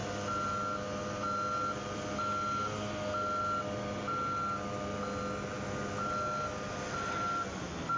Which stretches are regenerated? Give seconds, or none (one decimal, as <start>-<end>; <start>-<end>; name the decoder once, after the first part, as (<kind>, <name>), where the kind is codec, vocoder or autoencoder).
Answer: none